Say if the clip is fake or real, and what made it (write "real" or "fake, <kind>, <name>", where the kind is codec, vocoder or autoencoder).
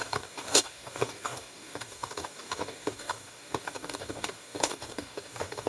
fake, codec, DAC